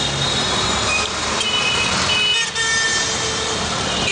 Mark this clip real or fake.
real